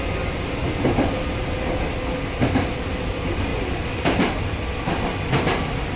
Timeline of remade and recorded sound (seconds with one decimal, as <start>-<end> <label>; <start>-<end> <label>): 0.0-3.5 recorded; 3.5-4.5 remade; 4.5-6.0 recorded